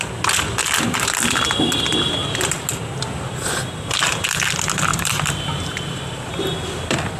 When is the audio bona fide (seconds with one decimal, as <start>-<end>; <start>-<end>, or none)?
0.0-4.9; 6.5-7.2